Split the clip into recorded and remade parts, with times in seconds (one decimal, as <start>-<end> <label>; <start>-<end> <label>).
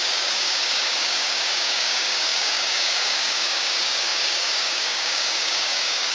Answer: 0.0-6.1 remade